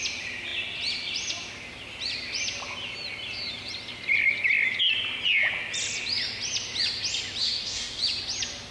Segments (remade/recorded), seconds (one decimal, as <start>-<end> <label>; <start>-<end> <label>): 0.0-7.4 recorded; 7.4-8.0 remade; 8.0-8.7 recorded